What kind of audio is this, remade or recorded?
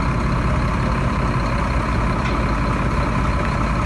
recorded